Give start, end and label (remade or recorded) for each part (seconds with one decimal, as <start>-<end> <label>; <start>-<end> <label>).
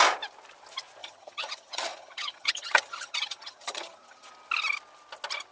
0.0-1.0 recorded; 1.0-4.3 remade; 4.3-5.5 recorded